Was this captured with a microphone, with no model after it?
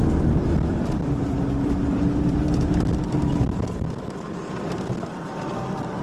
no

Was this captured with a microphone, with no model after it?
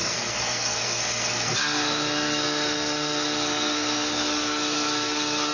no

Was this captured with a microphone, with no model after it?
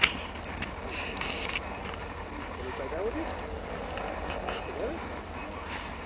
yes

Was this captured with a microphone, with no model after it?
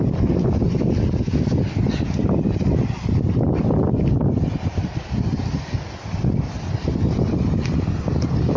yes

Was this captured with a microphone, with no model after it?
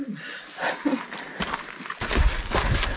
yes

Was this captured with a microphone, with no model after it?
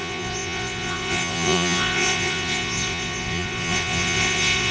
no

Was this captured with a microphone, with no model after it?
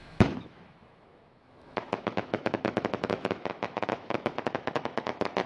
no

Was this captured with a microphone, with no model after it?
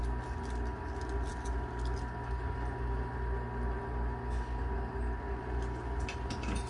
yes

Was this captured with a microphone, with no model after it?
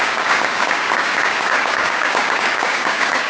no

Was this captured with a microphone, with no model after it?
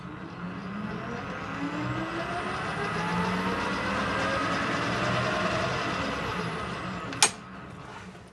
yes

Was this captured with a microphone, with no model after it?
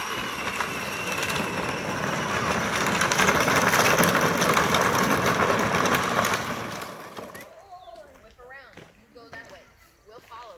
yes